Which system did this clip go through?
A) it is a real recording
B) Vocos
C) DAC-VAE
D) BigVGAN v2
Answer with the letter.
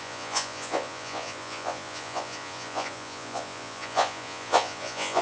B